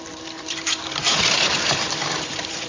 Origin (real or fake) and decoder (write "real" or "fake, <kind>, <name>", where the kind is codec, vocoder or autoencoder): fake, vocoder, BigVGAN v2